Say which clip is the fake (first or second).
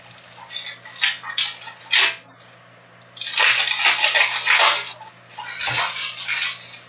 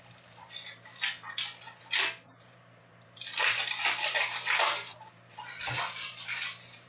second